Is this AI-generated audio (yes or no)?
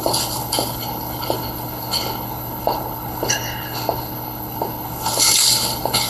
yes